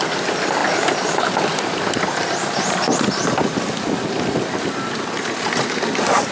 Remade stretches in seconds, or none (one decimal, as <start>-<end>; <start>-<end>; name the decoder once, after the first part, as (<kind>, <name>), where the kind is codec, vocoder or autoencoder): none